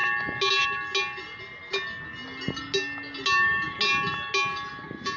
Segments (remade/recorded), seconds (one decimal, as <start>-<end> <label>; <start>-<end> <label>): 0.0-5.2 recorded